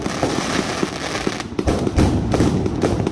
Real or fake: real